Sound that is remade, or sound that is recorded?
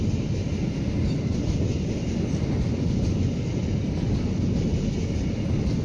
recorded